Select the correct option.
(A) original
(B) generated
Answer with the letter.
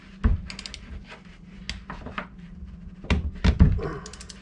A